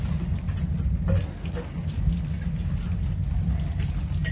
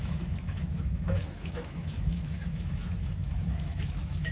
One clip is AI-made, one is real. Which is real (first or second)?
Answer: first